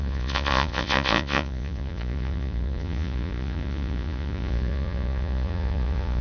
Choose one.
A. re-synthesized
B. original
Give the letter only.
A